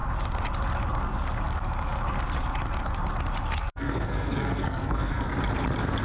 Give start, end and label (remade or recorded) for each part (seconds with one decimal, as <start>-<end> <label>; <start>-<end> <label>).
0.0-3.6 recorded; 3.6-5.3 remade; 5.3-6.0 recorded